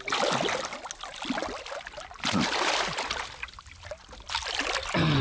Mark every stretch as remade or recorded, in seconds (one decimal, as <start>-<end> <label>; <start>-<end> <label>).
0.0-5.2 recorded

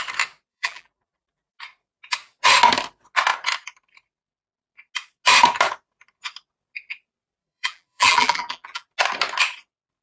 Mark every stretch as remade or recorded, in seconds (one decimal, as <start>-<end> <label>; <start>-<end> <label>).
0.0-0.5 recorded; 0.5-1.6 remade; 1.6-7.4 recorded; 7.4-8.9 remade; 8.9-10.0 recorded

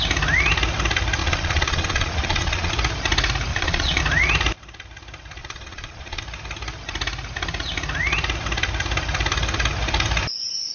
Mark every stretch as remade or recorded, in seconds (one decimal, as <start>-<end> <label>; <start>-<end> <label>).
0.0-1.2 recorded; 1.2-2.7 remade; 2.7-3.5 recorded; 3.5-4.0 remade; 4.0-5.4 recorded; 5.4-6.2 remade; 6.2-10.7 recorded

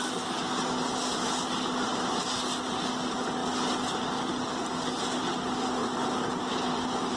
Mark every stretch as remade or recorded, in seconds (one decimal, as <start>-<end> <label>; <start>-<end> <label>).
0.0-7.2 recorded

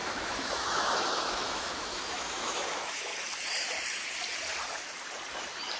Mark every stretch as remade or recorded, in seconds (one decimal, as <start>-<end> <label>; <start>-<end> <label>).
0.0-3.1 remade; 3.1-5.8 recorded

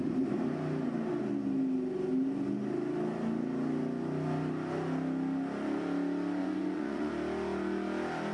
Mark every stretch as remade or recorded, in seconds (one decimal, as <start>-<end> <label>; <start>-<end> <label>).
0.0-6.4 recorded; 6.4-7.1 remade; 7.1-8.3 recorded